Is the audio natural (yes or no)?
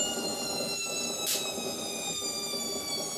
yes